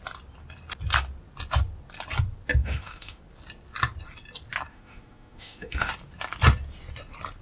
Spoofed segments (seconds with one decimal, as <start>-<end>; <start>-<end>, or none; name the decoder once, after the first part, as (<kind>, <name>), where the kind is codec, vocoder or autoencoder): 2.6-3.2 (autoencoder, DAC-VAE); 4.7-5.9